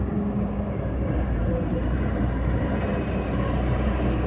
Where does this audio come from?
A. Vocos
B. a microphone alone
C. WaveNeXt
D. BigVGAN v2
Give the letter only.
D